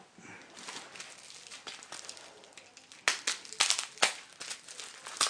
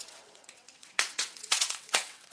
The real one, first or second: first